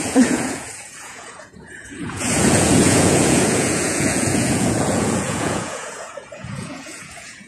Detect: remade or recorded remade